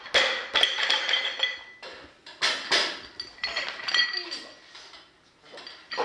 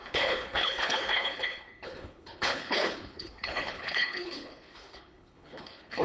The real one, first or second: first